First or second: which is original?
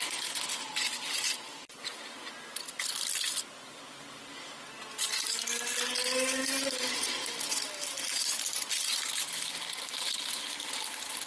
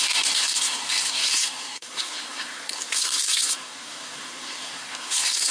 first